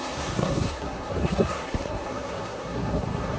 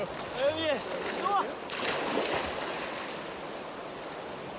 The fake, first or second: first